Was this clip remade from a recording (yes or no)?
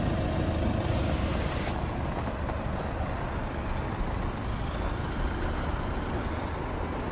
no